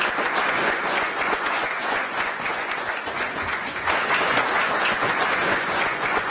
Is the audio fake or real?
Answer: fake